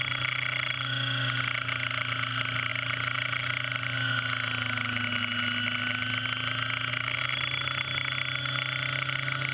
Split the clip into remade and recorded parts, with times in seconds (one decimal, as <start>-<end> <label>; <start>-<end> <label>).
0.0-9.5 recorded